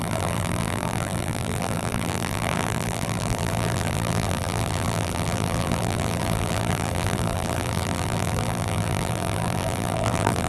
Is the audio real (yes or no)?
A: no